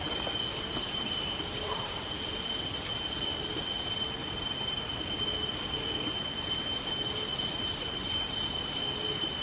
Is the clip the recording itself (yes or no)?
yes